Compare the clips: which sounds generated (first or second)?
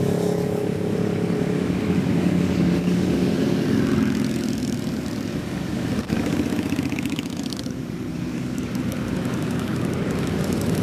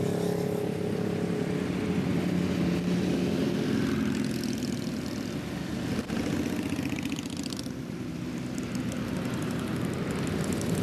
first